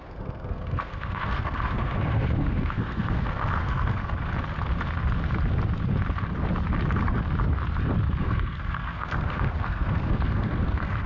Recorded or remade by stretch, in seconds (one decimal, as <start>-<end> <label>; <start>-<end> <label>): 0.0-4.0 remade; 4.0-8.2 recorded; 8.2-11.1 remade